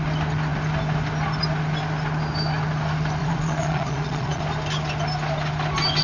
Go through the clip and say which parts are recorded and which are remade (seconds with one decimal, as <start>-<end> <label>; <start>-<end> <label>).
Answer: 0.0-3.2 recorded; 3.2-4.4 remade; 4.4-6.0 recorded